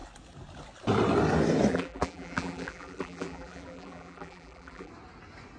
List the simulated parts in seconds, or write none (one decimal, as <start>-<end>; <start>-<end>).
1.7-4.9